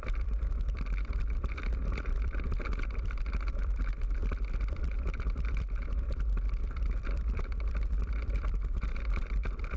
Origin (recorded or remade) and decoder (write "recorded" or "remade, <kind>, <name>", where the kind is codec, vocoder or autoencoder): remade, vocoder, BigVGAN v2